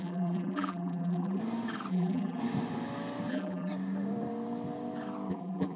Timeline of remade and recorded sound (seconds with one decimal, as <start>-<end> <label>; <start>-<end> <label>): 0.0-1.4 remade; 1.4-1.9 recorded; 1.9-2.4 remade; 2.4-3.3 recorded; 3.3-3.7 remade; 3.7-5.3 recorded; 5.3-5.8 remade